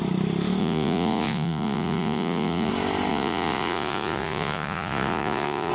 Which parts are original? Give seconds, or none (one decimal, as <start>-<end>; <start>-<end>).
0.0-0.6; 2.7-3.1